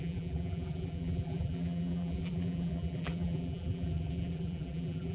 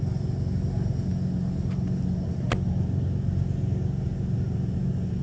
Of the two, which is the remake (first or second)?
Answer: first